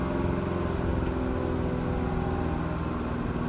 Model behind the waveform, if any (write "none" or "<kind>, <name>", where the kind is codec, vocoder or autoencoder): none